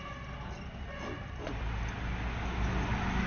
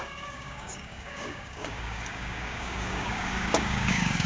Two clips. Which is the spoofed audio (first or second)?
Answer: second